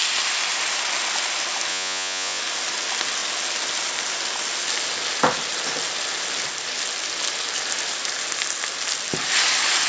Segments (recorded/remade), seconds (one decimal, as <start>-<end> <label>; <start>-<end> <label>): 0.0-1.7 recorded; 1.7-2.4 remade; 2.4-9.9 recorded